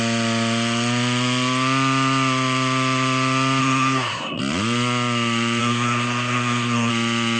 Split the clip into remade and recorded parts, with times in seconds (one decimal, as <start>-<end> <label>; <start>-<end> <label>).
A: 0.0-3.6 recorded; 3.6-4.4 remade; 4.4-5.6 recorded; 5.6-6.9 remade; 6.9-7.4 recorded